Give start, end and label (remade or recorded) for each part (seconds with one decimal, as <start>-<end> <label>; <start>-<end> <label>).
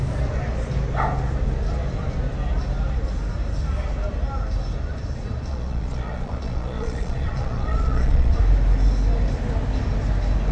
0.0-5.5 recorded; 5.5-8.4 remade; 8.4-10.5 recorded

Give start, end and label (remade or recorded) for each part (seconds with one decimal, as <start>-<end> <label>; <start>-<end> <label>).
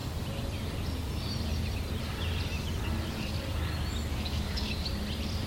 0.0-4.1 recorded; 4.1-4.7 remade; 4.7-5.5 recorded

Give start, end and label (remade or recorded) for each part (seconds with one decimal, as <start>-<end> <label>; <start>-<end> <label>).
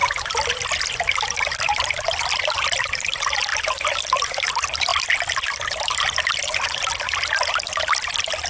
0.0-3.5 remade; 3.5-4.3 recorded; 4.3-4.9 remade; 4.9-6.3 recorded; 6.3-8.5 remade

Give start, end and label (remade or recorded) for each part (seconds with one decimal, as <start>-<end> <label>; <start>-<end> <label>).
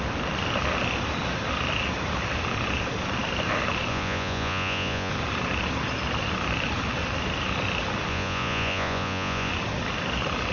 0.0-3.9 recorded; 3.9-5.1 remade; 5.1-8.1 recorded; 8.1-9.5 remade; 9.5-10.5 recorded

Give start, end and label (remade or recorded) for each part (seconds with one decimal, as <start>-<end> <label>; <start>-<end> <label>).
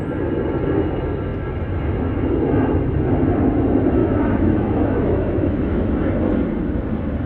0.0-4.0 recorded; 4.0-5.9 remade; 5.9-7.3 recorded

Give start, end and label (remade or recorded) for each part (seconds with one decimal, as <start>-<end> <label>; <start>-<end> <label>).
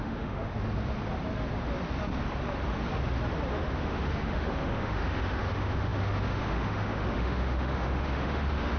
0.0-0.5 remade; 0.5-3.5 recorded; 3.5-8.8 remade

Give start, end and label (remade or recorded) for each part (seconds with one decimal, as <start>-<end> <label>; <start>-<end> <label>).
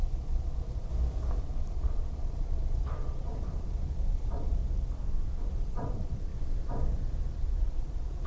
0.0-0.9 remade; 0.9-1.4 recorded; 1.4-4.6 remade; 4.6-5.4 recorded; 5.4-6.3 remade; 6.3-6.9 recorded; 6.9-8.3 remade